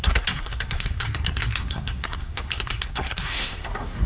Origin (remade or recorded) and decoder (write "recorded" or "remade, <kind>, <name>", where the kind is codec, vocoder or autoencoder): remade, codec, SNAC